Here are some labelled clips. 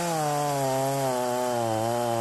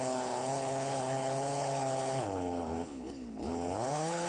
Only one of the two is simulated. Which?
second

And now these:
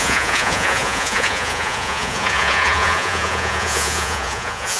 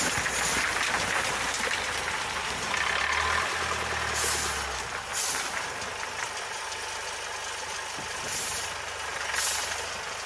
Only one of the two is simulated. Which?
first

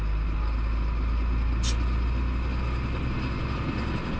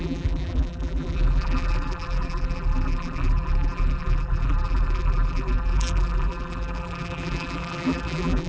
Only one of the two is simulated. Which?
second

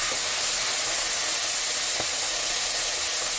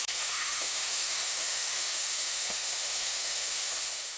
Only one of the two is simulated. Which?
second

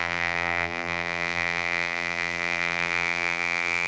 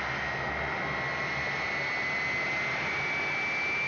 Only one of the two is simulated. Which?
first